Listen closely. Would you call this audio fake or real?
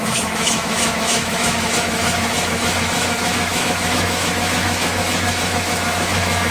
fake